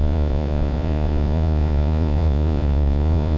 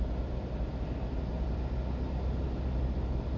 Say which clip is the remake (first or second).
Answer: first